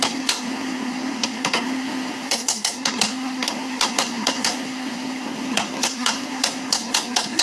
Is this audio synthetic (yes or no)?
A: yes